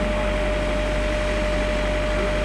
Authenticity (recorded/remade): recorded